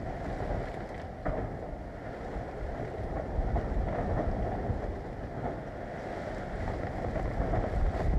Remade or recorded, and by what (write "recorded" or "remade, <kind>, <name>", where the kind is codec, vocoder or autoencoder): recorded